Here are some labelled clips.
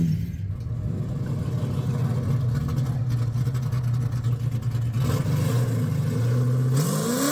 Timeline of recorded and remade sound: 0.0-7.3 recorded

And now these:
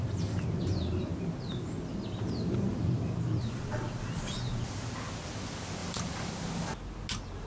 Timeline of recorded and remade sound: 0.0-5.8 recorded; 5.8-6.3 remade; 6.3-7.5 recorded

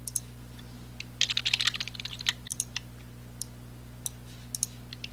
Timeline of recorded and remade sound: 0.0-2.5 remade; 2.5-5.1 recorded

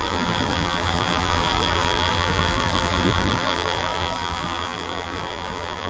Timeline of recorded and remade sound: 0.0-5.9 remade

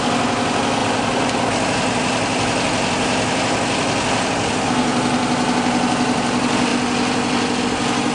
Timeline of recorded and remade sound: 0.0-0.8 recorded; 0.8-1.5 remade; 1.5-6.7 recorded; 6.7-7.6 remade; 7.6-8.1 recorded

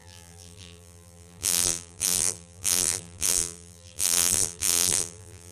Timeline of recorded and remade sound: 0.0-5.5 remade

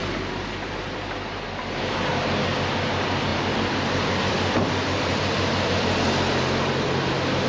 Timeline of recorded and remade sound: 0.0-3.3 recorded; 3.3-7.1 remade; 7.1-7.5 recorded

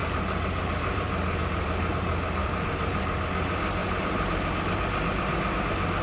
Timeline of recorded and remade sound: 0.0-1.9 remade; 1.9-2.4 recorded; 2.4-3.0 remade; 3.0-3.8 recorded; 3.8-4.5 remade; 4.5-6.0 recorded